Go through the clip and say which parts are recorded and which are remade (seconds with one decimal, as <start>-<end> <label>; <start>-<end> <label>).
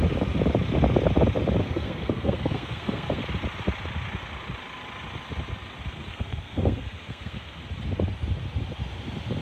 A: 0.0-1.6 recorded; 1.6-3.2 remade; 3.2-6.1 recorded; 6.1-7.6 remade; 7.6-9.4 recorded